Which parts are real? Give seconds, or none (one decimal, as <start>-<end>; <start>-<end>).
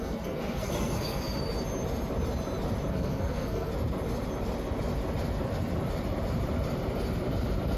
1.4-2.9; 3.7-7.8